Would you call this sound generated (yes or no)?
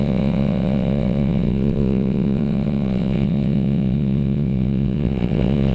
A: yes